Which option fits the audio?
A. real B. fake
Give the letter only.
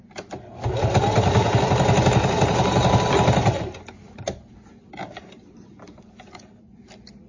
A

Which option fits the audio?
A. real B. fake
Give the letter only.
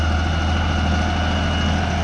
A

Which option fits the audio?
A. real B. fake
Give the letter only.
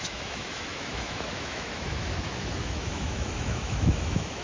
B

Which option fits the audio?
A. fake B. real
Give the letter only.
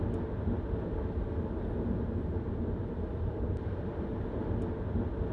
B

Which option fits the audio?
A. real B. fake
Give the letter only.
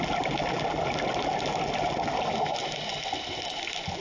A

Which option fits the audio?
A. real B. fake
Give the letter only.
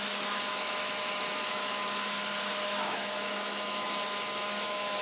B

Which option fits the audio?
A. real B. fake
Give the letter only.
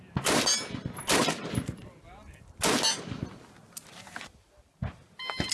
A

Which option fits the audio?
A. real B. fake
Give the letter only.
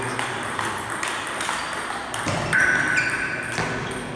A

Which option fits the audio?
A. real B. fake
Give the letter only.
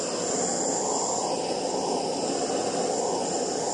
A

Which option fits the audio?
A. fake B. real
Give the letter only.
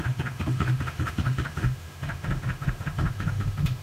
A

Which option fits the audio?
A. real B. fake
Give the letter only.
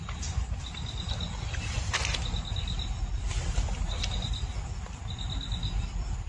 A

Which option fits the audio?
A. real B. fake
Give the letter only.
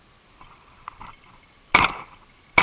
A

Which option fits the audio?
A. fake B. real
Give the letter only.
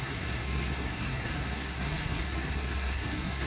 A